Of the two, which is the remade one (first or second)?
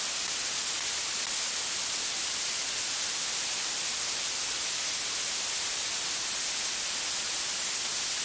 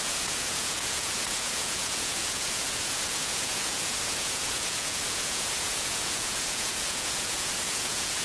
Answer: second